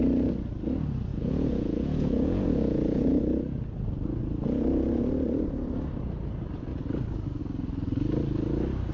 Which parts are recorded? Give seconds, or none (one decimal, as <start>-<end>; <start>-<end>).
0.0-1.1; 3.1-8.9